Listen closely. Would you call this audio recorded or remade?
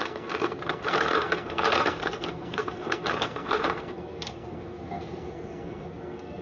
remade